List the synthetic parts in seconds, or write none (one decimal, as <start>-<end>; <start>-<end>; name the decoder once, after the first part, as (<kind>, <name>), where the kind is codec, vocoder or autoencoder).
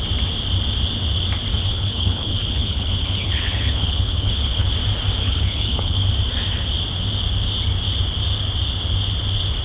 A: 1.5-4.7 (codec, HILCodec); 5.2-6.1